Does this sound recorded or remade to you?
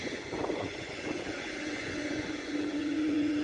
remade